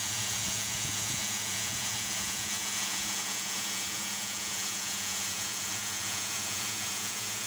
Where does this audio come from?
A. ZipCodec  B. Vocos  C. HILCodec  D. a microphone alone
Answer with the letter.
B